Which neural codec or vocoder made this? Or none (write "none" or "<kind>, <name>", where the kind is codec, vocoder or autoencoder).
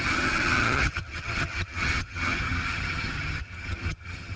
vocoder, HiFi-GAN